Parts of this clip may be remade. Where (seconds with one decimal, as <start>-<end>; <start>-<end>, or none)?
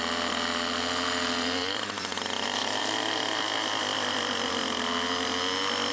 1.6-2.8; 3.9-4.5